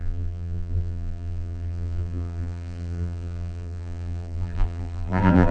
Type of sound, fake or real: fake